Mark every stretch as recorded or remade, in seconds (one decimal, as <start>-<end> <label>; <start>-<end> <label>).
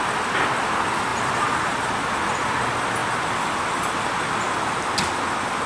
0.0-1.1 recorded; 1.1-1.8 remade; 1.8-5.7 recorded